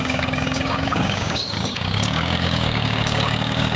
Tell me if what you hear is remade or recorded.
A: remade